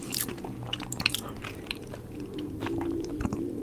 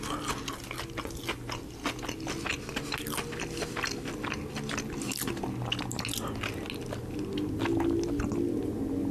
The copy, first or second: first